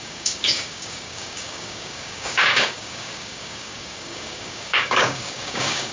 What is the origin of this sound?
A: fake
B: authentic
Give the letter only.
A